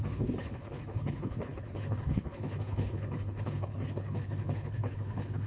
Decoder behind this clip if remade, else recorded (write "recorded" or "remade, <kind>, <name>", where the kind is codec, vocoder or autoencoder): remade, codec, HILCodec